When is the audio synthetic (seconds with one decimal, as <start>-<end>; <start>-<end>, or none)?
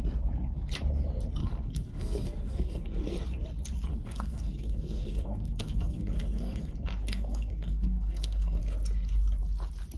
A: 1.4-3.2; 3.9-8.6